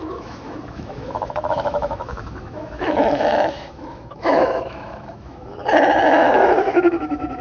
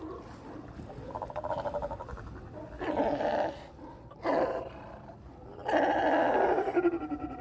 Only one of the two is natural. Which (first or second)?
second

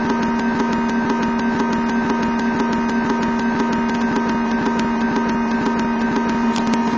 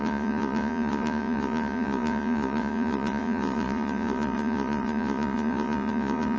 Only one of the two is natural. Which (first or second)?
first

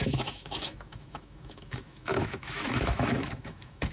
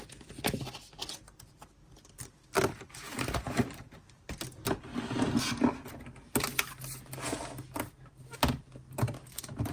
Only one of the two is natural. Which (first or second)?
second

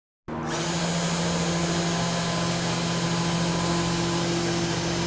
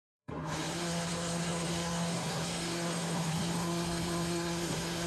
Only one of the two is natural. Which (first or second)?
first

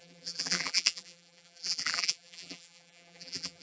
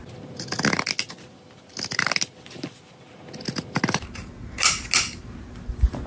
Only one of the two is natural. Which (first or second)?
second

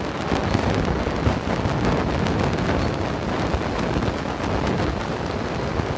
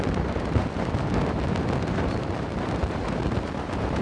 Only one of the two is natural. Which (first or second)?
first